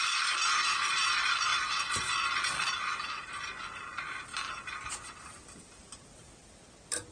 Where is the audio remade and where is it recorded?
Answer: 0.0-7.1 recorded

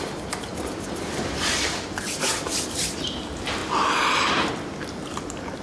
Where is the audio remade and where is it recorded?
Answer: 0.0-5.6 recorded